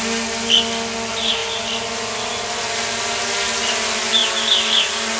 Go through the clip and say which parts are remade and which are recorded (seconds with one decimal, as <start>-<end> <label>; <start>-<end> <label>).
0.0-5.2 recorded